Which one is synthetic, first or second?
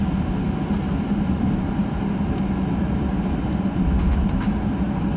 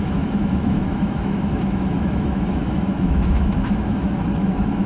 second